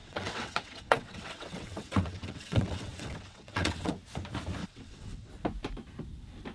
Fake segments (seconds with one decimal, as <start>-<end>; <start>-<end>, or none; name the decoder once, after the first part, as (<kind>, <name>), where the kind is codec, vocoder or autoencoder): 0.0-3.9 (vocoder, WaveNeXt); 4.6-5.3

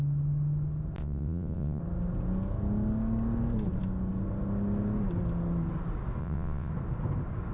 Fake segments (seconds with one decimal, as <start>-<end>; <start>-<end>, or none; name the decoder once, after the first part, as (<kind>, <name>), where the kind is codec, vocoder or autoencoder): 1.0-1.8 (vocoder, WaveNeXt); 6.2-6.7

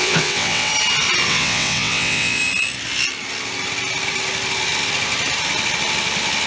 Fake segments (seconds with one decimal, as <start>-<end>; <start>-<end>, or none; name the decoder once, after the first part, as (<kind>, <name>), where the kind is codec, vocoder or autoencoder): 0.0-0.7 (vocoder, WaveNeXt); 1.3-2.4

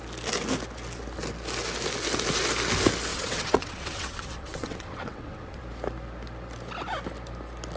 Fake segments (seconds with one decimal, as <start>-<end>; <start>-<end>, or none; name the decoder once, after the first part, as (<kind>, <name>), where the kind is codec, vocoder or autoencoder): 3.1-5.6 (vocoder, WaveNeXt)

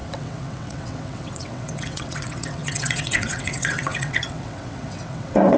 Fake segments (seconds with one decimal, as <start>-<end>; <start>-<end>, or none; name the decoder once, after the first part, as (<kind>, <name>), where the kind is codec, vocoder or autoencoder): 0.0-5.6 (vocoder, WaveNeXt)